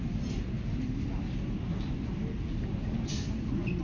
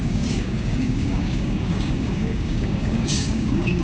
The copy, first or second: second